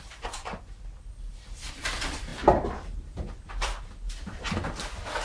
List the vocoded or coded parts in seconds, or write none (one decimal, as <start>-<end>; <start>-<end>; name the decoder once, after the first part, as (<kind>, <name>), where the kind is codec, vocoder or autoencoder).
0.0-5.2 (vocoder, BigVGAN v2)